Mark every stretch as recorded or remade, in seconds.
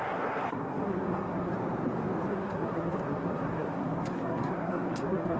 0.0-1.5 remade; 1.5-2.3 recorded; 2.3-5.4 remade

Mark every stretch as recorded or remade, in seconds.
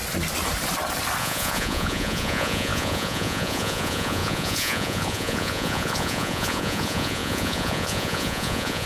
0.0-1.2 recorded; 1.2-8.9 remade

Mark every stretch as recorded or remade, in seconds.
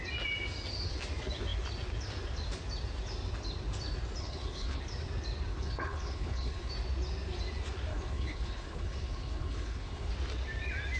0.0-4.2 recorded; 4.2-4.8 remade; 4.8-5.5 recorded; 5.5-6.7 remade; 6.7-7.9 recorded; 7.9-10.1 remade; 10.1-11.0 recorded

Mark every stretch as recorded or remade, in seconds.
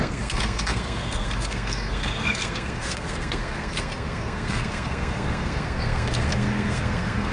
0.0-7.3 remade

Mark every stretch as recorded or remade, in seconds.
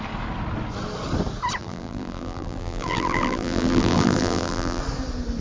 0.0-1.6 recorded; 1.6-4.8 remade; 4.8-5.4 recorded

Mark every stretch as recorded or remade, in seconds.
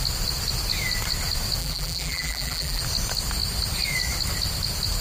0.0-1.6 recorded; 1.6-2.8 remade; 2.8-5.0 recorded